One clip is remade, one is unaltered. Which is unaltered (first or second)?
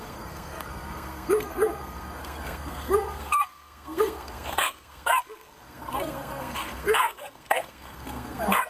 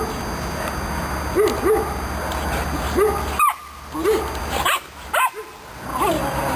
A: second